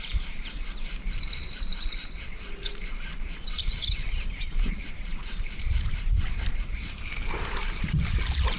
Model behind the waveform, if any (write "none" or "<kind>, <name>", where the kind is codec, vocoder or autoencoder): vocoder, BigVGAN v2